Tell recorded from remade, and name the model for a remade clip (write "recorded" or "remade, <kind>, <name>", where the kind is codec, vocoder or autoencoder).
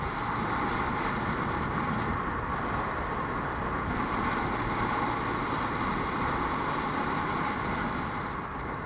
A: recorded